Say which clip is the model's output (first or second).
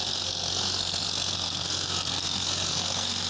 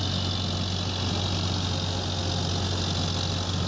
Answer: first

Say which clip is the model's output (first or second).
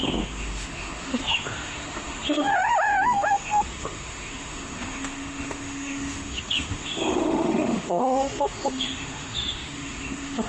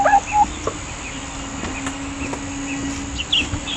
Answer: first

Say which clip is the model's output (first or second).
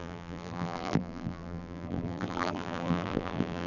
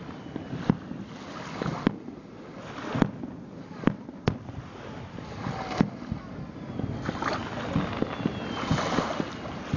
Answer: first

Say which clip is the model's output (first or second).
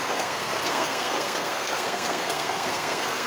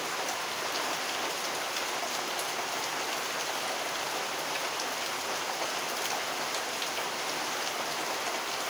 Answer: first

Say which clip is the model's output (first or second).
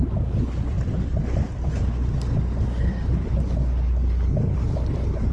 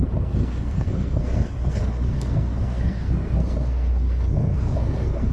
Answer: second